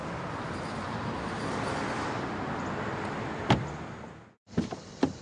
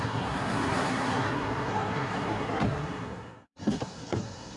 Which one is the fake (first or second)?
second